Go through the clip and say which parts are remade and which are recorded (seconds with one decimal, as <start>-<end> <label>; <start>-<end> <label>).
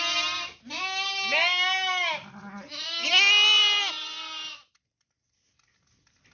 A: 0.0-6.3 recorded